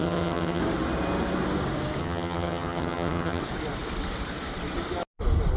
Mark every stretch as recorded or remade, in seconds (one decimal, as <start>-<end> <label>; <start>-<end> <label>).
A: 0.0-0.6 remade; 0.6-2.0 recorded; 2.0-3.4 remade; 3.4-5.6 recorded